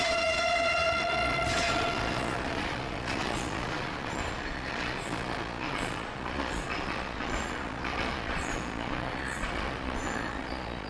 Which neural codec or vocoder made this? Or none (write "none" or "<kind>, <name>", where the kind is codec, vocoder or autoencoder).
vocoder, Vocos